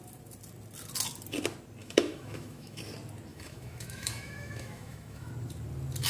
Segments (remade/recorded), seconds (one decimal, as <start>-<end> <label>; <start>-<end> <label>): 0.0-1.8 recorded; 1.8-2.8 remade; 2.8-3.3 recorded; 3.3-5.3 remade; 5.3-6.1 recorded